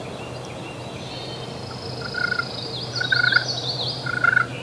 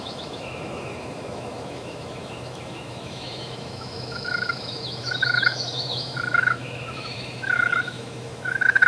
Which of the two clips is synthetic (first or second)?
second